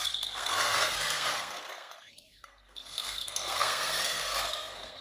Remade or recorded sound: remade